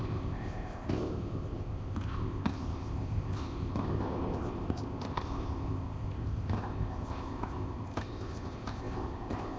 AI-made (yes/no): yes